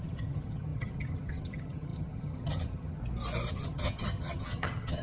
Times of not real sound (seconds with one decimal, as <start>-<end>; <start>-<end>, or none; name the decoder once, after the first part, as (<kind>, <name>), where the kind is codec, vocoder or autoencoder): 0.0-3.0 (vocoder, HiFi-GAN); 3.5-5.0